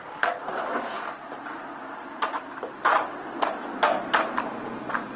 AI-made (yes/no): no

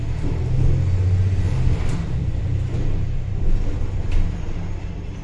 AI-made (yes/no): no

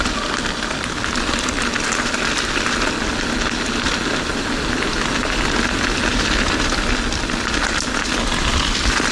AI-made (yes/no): no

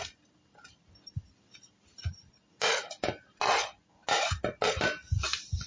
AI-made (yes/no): no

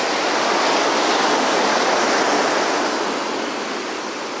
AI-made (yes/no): no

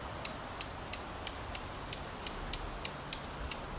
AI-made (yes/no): yes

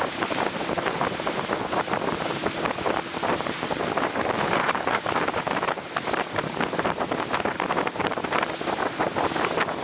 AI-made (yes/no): yes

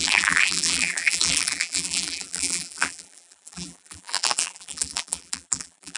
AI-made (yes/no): yes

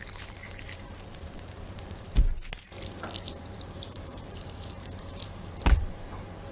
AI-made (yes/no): yes